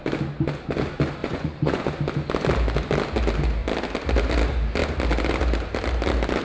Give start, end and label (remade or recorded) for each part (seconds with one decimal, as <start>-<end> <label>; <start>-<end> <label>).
0.0-1.2 recorded; 1.2-1.8 remade; 1.8-6.4 recorded